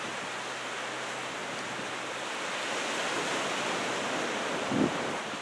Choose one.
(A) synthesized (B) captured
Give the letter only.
B